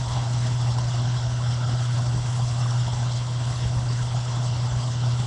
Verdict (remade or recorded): remade